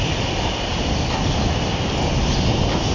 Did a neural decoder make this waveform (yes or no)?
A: no